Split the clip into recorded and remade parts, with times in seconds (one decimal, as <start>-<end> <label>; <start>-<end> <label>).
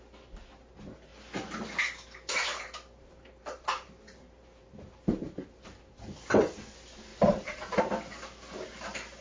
0.0-2.5 recorded; 2.5-5.7 remade; 5.7-7.1 recorded; 7.1-7.8 remade; 7.8-9.2 recorded